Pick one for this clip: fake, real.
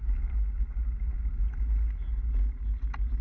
real